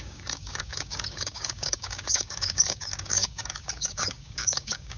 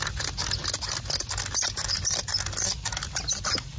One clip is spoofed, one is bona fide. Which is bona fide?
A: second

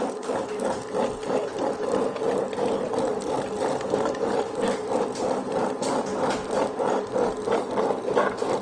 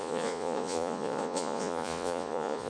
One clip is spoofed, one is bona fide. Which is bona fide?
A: first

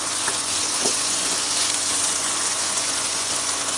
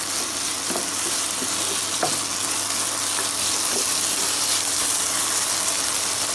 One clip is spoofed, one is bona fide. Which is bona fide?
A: second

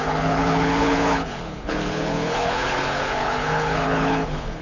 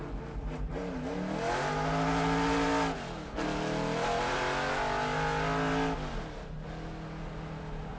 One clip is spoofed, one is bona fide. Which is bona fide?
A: second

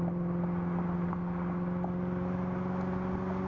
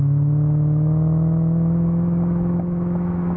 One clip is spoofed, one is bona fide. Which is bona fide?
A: first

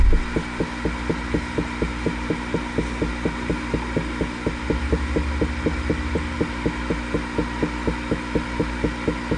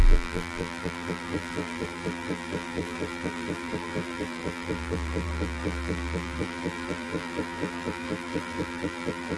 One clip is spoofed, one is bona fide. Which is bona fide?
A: first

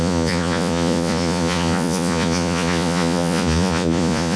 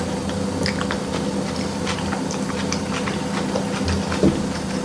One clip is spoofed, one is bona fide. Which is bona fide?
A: second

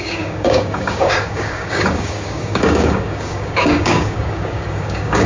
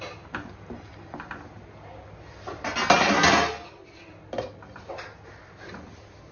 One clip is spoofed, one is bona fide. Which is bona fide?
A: second